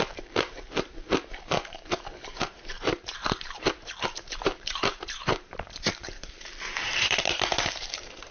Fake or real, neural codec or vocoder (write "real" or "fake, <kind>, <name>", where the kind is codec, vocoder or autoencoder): fake, vocoder, BigVGAN v2